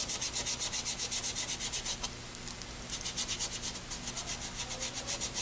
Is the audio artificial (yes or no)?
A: no